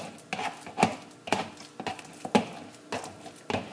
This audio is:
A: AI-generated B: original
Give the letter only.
B